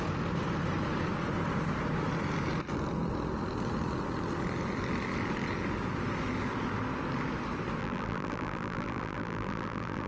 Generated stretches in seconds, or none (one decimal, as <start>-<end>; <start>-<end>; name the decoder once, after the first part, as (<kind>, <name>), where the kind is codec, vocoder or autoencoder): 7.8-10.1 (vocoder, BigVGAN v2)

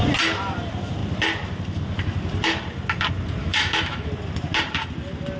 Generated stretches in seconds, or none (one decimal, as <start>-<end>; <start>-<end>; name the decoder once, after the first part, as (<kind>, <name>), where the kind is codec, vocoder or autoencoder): 3.4-4.1 (autoencoder, DAC-VAE)

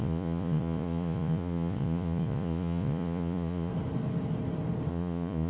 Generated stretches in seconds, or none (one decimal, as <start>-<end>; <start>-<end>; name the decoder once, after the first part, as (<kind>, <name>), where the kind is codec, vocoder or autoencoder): 0.0-3.7 (vocoder, Vocos); 4.9-5.5